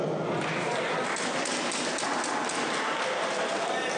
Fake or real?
real